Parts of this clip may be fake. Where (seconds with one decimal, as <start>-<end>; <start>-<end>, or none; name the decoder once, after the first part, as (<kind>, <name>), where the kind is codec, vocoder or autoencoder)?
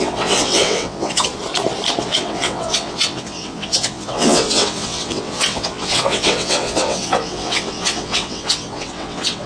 0.0-1.3 (vocoder, WaveNeXt); 2.0-9.5